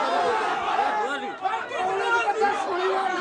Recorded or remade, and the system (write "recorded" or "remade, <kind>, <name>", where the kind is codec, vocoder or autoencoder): recorded